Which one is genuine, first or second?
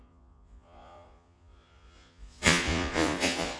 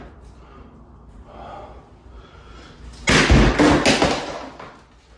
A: second